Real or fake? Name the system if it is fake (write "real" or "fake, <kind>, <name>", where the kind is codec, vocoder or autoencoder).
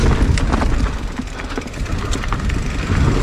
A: real